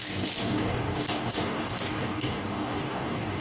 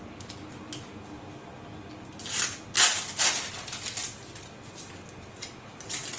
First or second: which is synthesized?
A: first